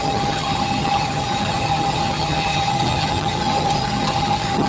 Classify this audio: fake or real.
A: fake